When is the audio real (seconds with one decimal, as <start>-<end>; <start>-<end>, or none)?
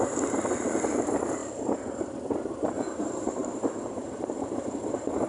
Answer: 1.4-2.0